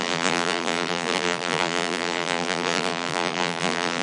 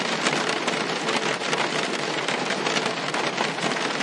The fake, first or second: first